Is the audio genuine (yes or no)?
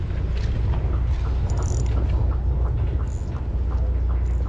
yes